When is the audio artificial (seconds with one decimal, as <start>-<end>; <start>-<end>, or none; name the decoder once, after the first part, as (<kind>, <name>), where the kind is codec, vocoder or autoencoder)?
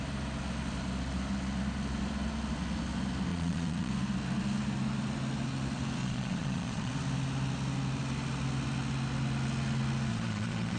3.3-3.9 (vocoder, Vocos); 6.0-6.9; 10.1-10.8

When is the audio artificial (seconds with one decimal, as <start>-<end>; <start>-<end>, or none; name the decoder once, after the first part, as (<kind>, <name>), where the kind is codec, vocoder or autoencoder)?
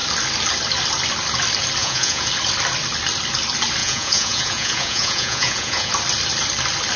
1.8-2.3 (vocoder, Vocos); 3.8-5.9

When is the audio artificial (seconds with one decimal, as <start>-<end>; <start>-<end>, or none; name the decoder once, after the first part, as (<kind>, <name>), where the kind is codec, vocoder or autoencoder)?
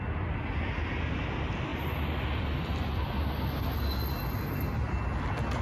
none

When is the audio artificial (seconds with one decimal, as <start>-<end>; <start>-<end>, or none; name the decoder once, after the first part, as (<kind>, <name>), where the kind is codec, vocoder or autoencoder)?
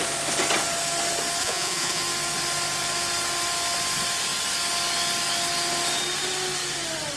1.4-2.0 (vocoder, Vocos)